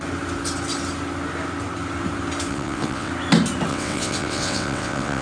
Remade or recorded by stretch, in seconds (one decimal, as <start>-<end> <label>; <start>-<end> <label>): 0.0-2.5 recorded; 2.5-3.1 remade; 3.1-3.7 recorded; 3.7-5.2 remade